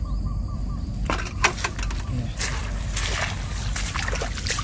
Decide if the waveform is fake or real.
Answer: real